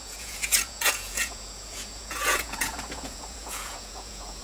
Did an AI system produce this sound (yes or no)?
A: yes